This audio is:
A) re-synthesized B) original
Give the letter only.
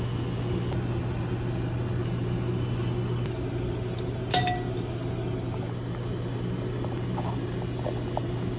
B